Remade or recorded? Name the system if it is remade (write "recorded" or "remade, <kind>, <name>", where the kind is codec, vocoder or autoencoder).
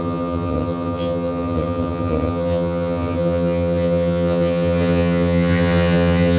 remade, vocoder, HiFi-GAN